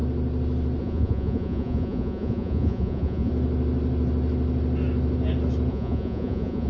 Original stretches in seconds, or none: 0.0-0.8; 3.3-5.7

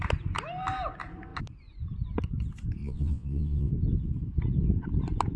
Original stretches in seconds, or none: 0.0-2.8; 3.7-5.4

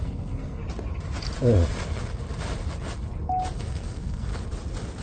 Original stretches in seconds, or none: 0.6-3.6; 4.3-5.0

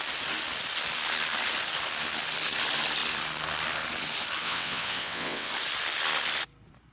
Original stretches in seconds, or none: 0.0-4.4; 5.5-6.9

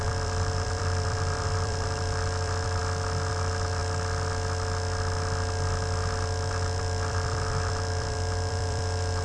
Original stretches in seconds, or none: 2.8-3.3; 3.8-6.5

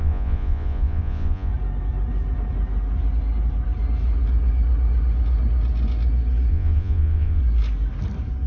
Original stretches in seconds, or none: 1.5-6.5; 7.4-8.5

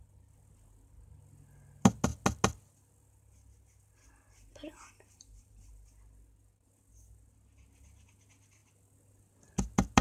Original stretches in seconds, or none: 0.0-4.5; 5.7-10.0